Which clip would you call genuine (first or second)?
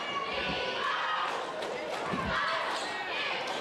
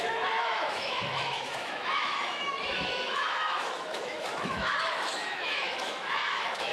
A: first